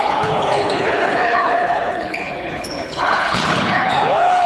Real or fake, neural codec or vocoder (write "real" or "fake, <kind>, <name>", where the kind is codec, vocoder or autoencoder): fake, codec, HILCodec